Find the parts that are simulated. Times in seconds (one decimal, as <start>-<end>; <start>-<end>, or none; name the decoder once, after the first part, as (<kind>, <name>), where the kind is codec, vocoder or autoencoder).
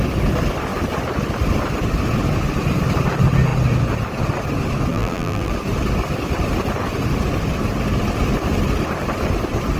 4.9-5.5 (vocoder, BigVGAN v2)